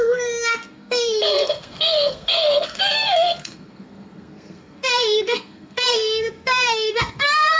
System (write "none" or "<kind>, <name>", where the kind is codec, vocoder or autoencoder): codec, SNAC